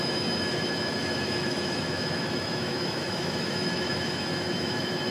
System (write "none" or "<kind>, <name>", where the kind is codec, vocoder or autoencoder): autoencoder, DAC-VAE